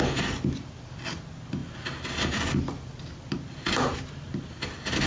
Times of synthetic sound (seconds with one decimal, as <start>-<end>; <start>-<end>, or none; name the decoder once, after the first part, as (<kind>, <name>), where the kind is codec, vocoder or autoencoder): none